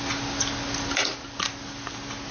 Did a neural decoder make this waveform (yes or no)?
no